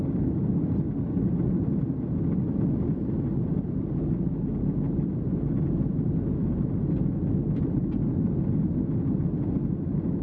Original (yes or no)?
yes